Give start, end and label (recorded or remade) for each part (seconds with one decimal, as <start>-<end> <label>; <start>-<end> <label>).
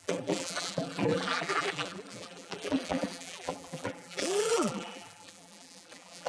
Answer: 0.0-6.3 remade